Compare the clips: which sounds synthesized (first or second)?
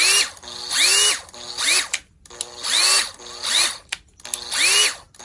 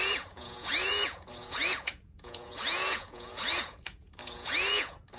second